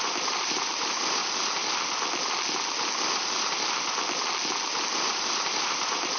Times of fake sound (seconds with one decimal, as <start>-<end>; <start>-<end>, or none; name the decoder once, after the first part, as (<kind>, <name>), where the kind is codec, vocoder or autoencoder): 0.0-1.2 (vocoder, BigVGAN v2); 4.9-6.2